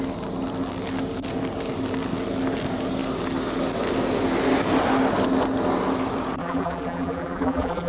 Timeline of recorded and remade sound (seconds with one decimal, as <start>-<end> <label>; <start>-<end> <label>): 0.0-6.4 recorded; 6.4-7.9 remade